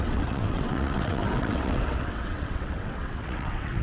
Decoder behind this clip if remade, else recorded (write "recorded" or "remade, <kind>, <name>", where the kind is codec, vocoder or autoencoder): remade, vocoder, WaveNeXt